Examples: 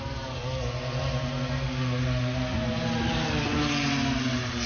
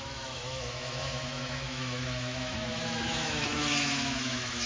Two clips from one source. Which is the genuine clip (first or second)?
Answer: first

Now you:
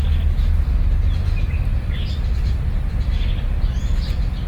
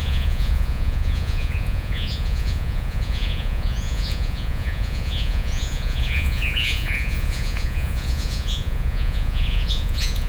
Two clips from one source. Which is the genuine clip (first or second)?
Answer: first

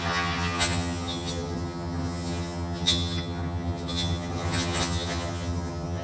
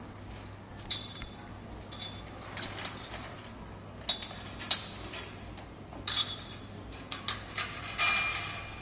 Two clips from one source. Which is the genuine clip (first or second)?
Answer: second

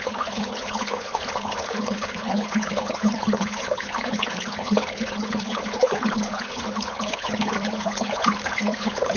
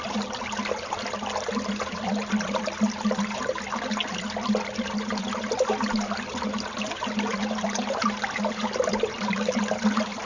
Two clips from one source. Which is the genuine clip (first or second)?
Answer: second